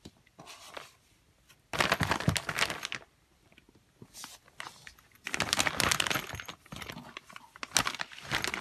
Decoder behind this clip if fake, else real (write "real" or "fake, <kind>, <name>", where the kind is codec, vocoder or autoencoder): real